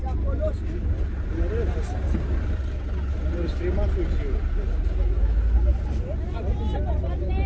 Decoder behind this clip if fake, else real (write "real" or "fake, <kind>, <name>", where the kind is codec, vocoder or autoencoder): real